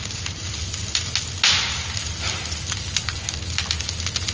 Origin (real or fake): real